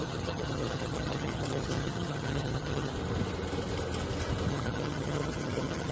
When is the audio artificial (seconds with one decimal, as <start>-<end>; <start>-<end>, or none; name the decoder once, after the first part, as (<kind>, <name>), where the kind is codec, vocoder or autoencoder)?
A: 0.0-2.9 (vocoder, HiFi-GAN); 4.5-5.9